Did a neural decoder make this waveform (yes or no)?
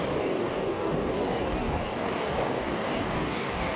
yes